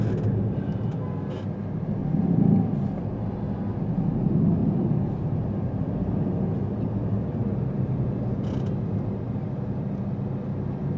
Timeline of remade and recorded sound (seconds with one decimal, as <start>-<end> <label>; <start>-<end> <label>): 0.0-2.0 recorded; 2.0-2.6 remade; 2.6-4.6 recorded; 4.6-5.3 remade; 5.3-11.0 recorded